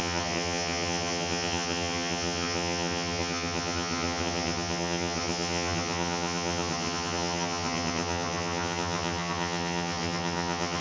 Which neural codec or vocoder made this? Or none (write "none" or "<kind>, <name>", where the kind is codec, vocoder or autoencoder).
vocoder, HiFi-GAN